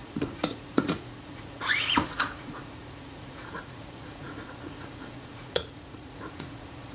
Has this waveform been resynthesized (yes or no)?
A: yes